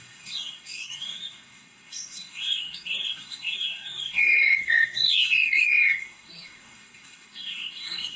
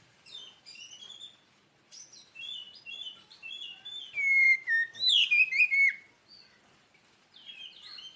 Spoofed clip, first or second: first